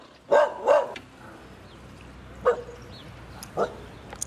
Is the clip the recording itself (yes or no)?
yes